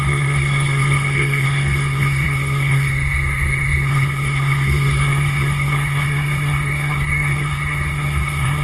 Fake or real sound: fake